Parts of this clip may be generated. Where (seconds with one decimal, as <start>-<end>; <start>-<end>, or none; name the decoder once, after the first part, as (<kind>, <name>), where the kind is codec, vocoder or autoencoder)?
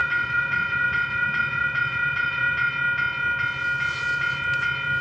0.0-2.7 (vocoder, Vocos)